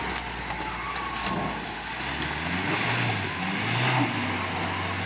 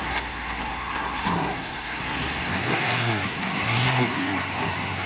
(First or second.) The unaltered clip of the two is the first